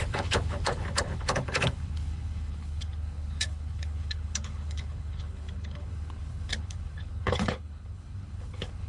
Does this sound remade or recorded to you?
remade